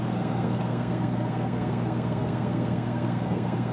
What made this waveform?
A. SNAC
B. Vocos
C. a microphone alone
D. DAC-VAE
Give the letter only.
A